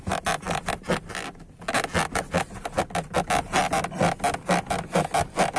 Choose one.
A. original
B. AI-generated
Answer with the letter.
A